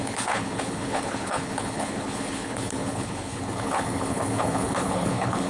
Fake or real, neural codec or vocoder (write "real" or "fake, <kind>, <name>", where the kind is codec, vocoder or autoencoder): fake, codec, HILCodec